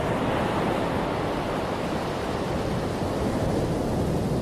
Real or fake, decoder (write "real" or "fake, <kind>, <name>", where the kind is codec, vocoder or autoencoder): real